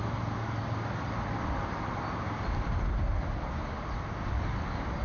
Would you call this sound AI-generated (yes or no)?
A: no